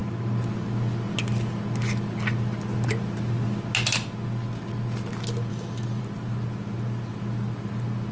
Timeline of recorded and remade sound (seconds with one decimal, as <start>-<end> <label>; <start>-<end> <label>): 0.0-5.5 recorded; 5.5-6.0 remade; 6.0-8.1 recorded